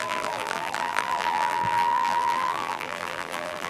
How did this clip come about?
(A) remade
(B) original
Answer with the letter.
A